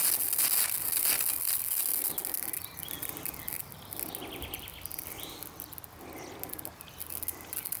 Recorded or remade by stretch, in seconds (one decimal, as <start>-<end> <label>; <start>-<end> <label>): 0.0-4.7 recorded; 4.7-5.4 remade; 5.4-7.8 recorded

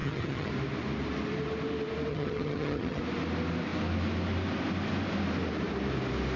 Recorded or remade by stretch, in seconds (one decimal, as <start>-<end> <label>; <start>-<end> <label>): 0.0-0.5 remade; 0.5-2.1 recorded; 2.1-3.0 remade; 3.0-6.4 recorded

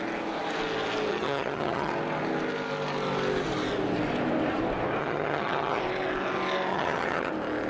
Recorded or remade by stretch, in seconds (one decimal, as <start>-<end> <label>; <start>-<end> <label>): 0.0-1.1 recorded; 1.1-1.9 remade; 1.9-5.0 recorded; 5.0-5.8 remade; 5.8-6.7 recorded; 6.7-7.3 remade; 7.3-7.7 recorded

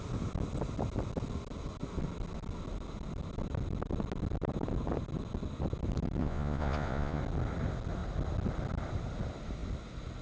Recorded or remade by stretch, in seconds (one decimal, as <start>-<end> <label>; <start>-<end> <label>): 0.0-6.2 recorded; 6.2-7.2 remade; 7.2-10.2 recorded

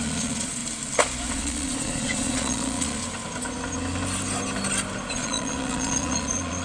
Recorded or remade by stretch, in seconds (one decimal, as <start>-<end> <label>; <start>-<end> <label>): 0.0-0.6 remade; 0.6-1.3 recorded; 1.3-3.0 remade; 3.0-5.1 recorded; 5.1-6.6 remade

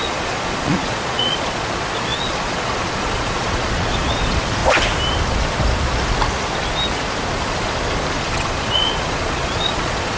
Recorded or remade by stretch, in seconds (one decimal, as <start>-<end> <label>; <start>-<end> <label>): 0.0-4.6 remade; 4.6-8.1 recorded; 8.1-10.2 remade